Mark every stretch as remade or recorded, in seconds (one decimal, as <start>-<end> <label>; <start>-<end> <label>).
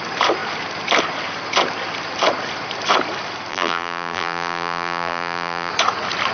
0.0-3.5 recorded; 3.5-5.7 remade; 5.7-6.3 recorded